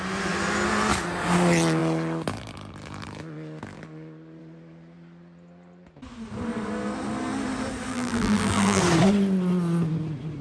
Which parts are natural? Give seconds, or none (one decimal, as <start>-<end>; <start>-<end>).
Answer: 0.0-7.9; 8.8-10.4